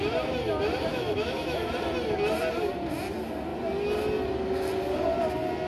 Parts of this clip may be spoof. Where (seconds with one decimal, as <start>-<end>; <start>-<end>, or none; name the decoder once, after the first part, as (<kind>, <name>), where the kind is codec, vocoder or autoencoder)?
0.9-1.7 (autoencoder, DAC-VAE)